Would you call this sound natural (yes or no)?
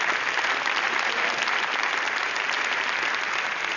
yes